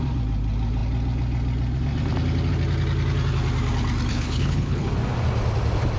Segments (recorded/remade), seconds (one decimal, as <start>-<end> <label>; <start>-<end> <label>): 0.0-4.1 recorded; 4.1-4.9 remade; 4.9-6.0 recorded